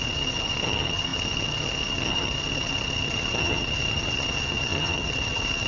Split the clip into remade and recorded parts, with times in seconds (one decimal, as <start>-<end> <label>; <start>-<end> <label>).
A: 0.0-5.7 remade